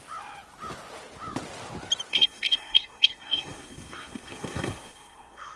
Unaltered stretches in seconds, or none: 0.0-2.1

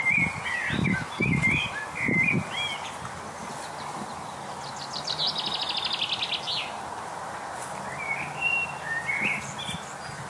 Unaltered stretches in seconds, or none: 0.0-10.3

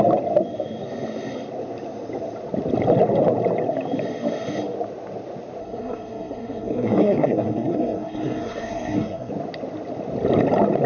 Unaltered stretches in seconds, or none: 0.0-5.6; 9.3-10.9

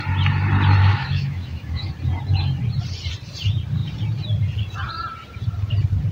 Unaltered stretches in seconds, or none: 0.0-0.8; 1.9-6.1

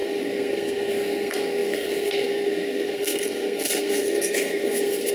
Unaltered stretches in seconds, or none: none

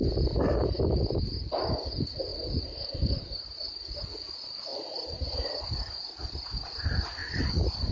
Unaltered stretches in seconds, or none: 0.0-2.3; 4.1-4.7; 5.7-7.2

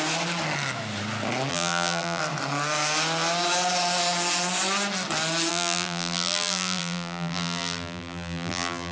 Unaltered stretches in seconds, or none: 0.0-1.5; 2.2-5.5